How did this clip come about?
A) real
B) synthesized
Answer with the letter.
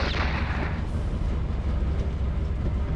A